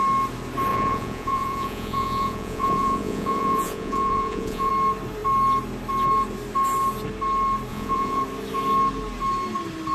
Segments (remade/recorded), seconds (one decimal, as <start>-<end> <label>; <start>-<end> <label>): 0.0-0.7 recorded; 0.7-4.7 remade; 4.7-7.7 recorded; 7.7-8.2 remade; 8.2-9.9 recorded